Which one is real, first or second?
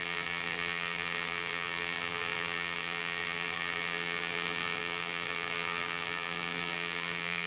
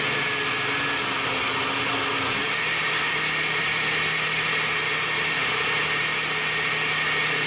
second